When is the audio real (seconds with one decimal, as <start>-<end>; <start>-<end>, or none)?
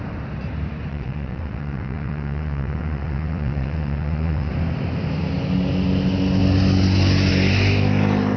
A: 0.0-0.9; 4.5-8.4